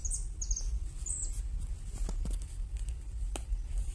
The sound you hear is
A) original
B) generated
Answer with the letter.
A